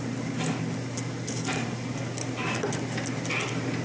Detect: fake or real real